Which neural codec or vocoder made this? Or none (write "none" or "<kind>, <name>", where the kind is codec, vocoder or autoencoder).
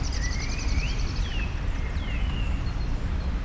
none